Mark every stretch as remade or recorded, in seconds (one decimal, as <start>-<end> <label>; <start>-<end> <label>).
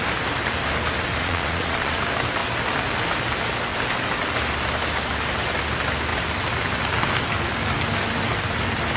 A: 0.0-1.2 recorded; 1.2-2.0 remade; 2.0-9.0 recorded